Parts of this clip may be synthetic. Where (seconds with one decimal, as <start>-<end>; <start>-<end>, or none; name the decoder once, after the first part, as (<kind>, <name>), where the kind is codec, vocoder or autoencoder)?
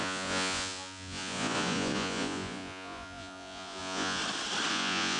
0.0-4.2 (vocoder, Vocos); 4.7-5.2